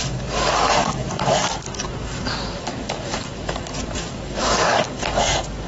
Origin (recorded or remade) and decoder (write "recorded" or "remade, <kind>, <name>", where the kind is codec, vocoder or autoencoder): remade, codec, DAC